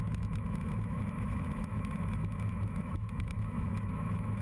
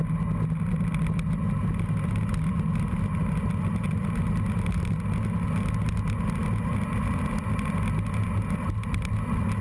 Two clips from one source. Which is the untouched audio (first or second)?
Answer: second